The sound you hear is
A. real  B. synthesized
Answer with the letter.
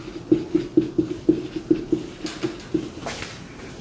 A